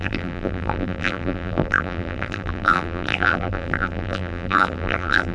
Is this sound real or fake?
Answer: fake